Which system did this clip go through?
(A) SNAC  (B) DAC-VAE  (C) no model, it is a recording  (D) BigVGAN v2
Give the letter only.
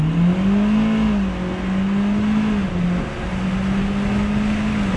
C